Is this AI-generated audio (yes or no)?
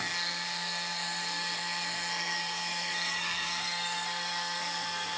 yes